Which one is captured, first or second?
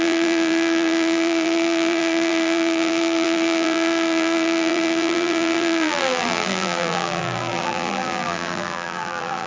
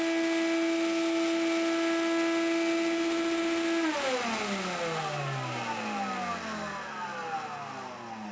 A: second